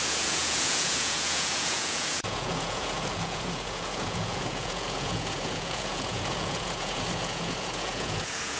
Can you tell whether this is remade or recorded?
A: remade